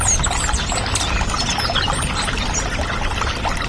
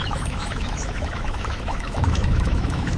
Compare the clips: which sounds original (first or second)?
first